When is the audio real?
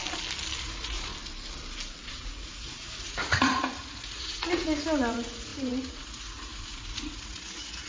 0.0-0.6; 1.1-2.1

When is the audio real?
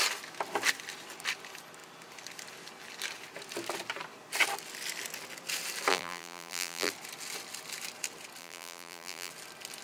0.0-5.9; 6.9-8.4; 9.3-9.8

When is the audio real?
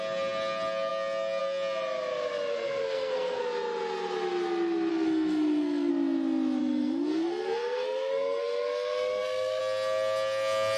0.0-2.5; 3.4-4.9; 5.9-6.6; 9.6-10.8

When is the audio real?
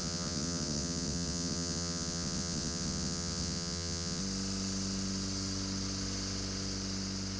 4.2-7.4